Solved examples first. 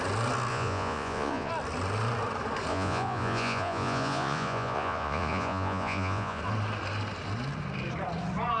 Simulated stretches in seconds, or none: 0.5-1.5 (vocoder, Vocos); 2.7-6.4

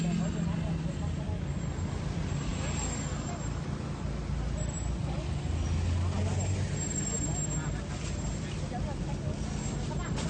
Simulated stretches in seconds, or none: none